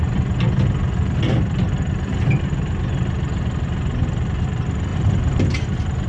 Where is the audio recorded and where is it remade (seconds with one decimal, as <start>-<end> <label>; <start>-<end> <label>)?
0.0-2.1 recorded; 2.1-3.0 remade; 3.0-4.9 recorded; 4.9-5.4 remade; 5.4-6.1 recorded